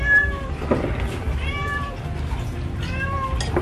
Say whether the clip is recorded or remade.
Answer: recorded